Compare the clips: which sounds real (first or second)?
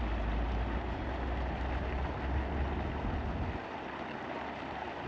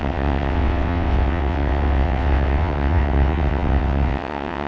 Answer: first